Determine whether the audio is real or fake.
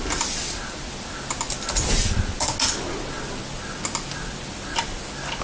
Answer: real